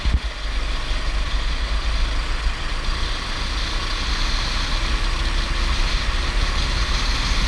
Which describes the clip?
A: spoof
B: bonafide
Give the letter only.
B